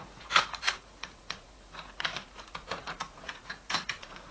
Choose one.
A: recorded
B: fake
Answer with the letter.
B